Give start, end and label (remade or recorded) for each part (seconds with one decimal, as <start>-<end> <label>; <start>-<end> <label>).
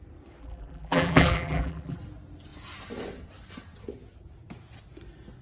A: 0.0-0.4 recorded; 0.4-2.0 remade; 2.0-5.4 recorded